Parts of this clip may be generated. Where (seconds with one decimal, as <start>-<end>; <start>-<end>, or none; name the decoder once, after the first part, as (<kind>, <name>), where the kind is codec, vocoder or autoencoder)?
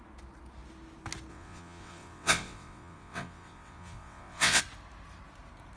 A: 1.3-4.6 (vocoder, WaveNeXt)